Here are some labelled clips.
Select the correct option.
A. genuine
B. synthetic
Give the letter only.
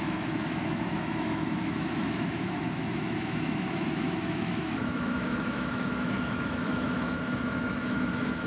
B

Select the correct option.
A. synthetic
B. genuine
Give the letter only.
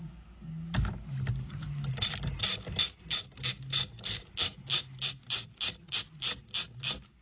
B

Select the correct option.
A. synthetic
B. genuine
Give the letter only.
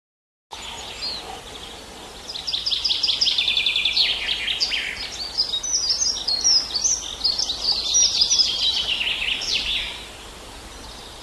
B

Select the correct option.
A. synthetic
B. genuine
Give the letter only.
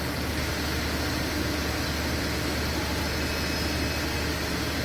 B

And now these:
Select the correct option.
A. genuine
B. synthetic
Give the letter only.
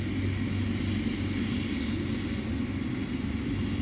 A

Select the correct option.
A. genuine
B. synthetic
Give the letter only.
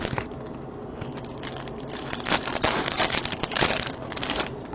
A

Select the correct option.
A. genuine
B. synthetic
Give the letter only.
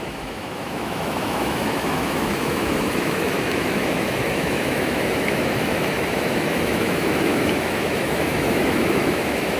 B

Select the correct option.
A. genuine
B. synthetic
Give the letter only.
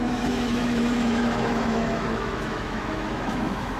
B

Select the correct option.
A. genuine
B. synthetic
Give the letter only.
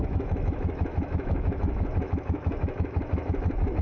B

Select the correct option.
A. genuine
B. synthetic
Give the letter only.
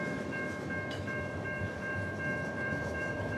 B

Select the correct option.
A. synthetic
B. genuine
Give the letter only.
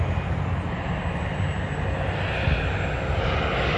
B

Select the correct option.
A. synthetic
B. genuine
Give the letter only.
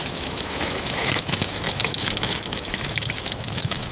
A